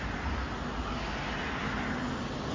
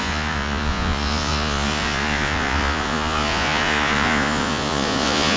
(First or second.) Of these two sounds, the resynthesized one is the second